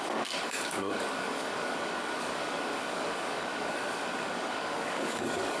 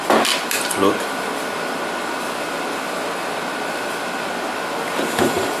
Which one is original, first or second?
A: second